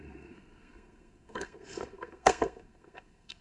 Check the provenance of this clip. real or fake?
fake